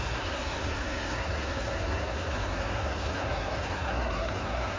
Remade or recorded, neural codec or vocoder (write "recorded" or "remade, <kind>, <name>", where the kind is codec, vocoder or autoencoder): remade, codec, SNAC